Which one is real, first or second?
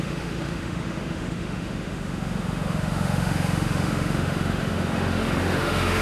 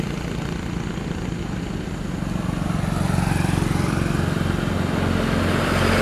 second